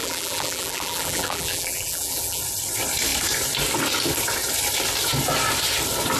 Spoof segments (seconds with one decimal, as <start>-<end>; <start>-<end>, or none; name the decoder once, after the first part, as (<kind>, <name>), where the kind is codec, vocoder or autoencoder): 0.0-2.4 (vocoder, BigVGAN v2)

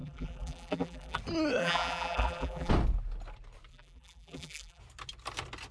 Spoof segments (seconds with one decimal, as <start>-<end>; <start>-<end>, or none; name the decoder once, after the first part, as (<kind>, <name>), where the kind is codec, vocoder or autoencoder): 0.0-1.2 (vocoder, BigVGAN v2); 1.6-2.7; 3.7-4.8

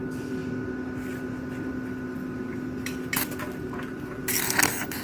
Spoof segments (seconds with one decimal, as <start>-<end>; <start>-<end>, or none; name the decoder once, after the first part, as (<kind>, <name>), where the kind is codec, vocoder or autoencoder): none

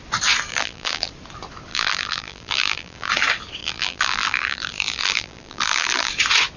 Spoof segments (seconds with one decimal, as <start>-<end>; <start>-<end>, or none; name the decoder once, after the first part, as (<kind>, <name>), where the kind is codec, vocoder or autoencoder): 0.5-1.1 (vocoder, BigVGAN v2); 1.7-3.1; 3.6-6.1